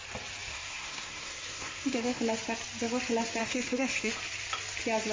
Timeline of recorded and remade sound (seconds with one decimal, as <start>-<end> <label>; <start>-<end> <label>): 0.0-0.5 recorded; 0.5-2.2 remade; 2.2-3.4 recorded; 3.4-4.1 remade; 4.1-5.1 recorded